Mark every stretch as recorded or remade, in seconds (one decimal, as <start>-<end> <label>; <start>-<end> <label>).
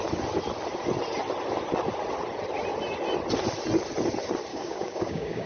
0.0-4.5 recorded; 4.5-5.5 remade